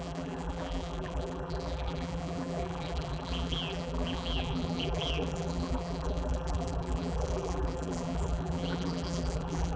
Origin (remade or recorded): remade